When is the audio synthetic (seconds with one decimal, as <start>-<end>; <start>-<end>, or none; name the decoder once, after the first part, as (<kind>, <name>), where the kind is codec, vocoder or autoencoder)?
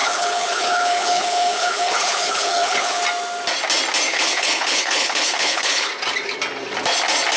0.0-3.0 (codec, HILCodec); 4.1-5.9